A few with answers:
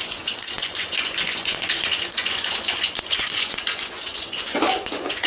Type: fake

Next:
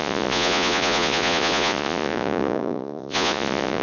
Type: fake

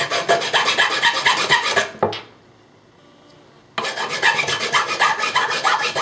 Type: real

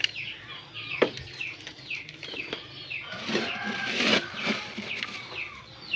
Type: real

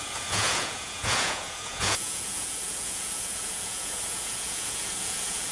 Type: fake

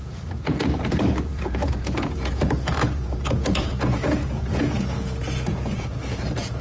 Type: fake